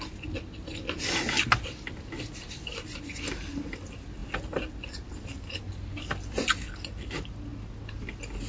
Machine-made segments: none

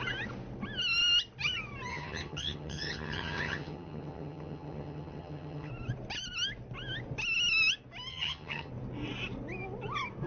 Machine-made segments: 1.9-5.7 (vocoder, HiFi-GAN); 8.1-8.7

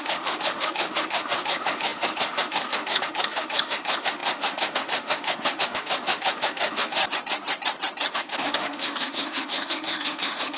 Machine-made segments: 0.0-7.0 (autoencoder, DAC-VAE); 8.1-10.6

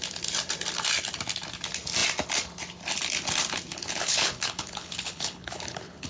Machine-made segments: 3.7-6.1 (codec, HILCodec)

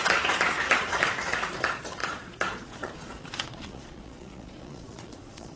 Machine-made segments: 2.0-5.6 (vocoder, Vocos)

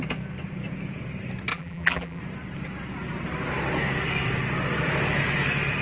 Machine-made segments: 1.5-2.2 (vocoder, BigVGAN v2)

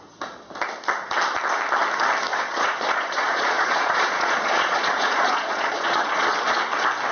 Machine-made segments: 2.3-6.6 (vocoder, Vocos)